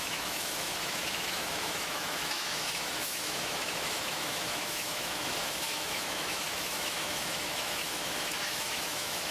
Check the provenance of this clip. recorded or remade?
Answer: remade